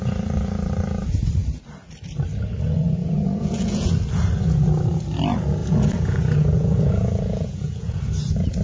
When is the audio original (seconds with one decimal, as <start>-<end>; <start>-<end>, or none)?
0.0-3.0; 3.9-5.6; 8.0-8.6